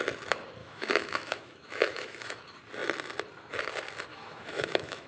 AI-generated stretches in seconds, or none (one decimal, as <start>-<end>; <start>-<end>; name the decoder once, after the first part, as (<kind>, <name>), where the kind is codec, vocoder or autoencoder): 0.6-2.4 (autoencoder, DAC-VAE); 4.1-5.1